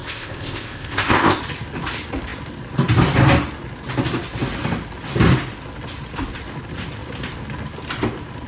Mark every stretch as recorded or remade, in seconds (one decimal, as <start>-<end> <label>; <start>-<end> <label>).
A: 0.0-1.4 remade; 1.4-8.5 recorded